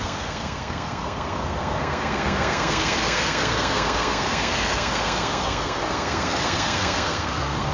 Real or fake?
fake